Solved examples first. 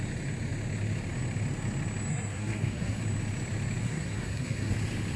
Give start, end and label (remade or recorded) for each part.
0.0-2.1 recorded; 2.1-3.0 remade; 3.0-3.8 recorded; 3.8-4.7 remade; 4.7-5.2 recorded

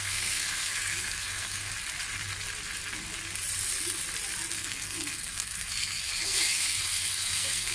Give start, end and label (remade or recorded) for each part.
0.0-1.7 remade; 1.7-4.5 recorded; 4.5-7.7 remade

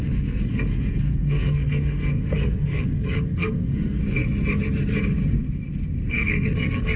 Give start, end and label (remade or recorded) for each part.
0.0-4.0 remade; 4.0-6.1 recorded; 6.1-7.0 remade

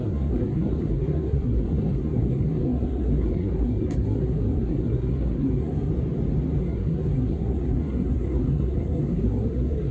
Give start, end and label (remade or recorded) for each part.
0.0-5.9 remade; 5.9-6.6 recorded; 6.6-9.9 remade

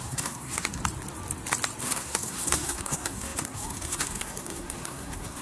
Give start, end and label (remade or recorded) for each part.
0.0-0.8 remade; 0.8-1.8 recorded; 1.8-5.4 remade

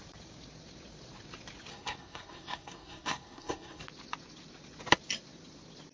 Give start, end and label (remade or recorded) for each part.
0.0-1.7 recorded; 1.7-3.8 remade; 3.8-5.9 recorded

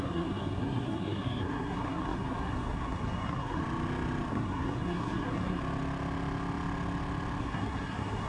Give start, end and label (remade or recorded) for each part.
0.0-3.6 remade; 3.6-4.3 recorded; 4.3-5.6 remade; 5.6-7.4 recorded; 7.4-8.3 remade